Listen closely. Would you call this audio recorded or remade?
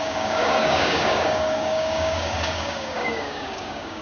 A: remade